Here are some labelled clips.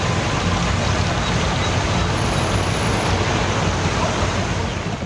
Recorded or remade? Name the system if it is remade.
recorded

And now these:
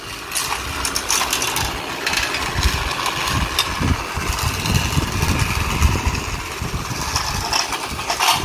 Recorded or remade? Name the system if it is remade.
recorded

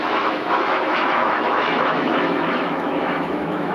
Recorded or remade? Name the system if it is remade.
remade, autoencoder, DAC-VAE